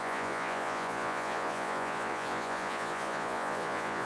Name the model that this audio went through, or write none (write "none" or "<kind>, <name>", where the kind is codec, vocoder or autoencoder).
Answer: vocoder, Vocos